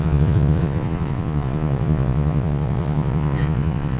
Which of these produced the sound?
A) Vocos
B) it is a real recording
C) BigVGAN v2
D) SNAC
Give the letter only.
A